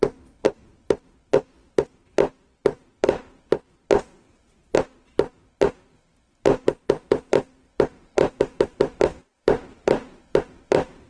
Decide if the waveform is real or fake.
real